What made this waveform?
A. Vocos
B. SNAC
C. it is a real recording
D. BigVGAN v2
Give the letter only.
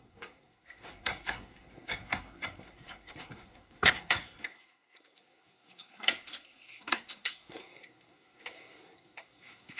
B